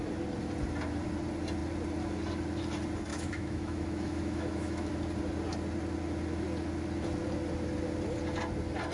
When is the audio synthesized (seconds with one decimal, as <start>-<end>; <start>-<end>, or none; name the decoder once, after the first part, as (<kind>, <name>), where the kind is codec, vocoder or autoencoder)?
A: 3.1-4.9 (autoencoder, DAC-VAE)